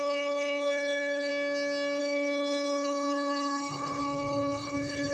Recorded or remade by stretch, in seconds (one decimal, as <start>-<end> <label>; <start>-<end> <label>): 0.0-1.3 remade; 1.3-2.0 recorded; 2.0-5.1 remade